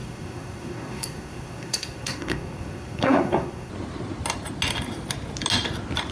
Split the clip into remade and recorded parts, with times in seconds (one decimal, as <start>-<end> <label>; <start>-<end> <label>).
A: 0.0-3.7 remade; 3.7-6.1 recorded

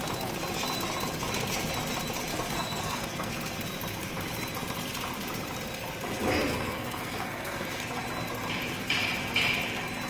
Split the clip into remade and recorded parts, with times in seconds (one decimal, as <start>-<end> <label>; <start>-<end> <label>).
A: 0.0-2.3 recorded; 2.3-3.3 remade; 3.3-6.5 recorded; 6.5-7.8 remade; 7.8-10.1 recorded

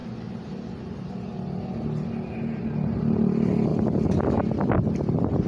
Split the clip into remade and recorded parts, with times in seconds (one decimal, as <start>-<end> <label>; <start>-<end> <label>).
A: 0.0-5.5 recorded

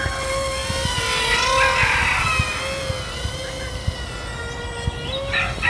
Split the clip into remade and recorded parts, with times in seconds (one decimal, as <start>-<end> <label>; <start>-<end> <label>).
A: 0.0-5.7 recorded

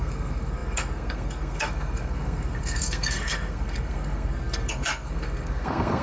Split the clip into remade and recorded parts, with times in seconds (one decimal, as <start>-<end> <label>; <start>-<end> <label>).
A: 0.0-6.0 remade